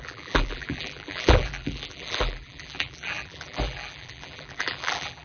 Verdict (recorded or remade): remade